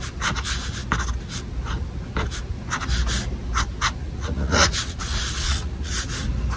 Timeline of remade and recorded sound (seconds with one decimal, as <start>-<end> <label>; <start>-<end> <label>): 0.0-4.0 recorded; 4.0-5.9 remade; 5.9-6.6 recorded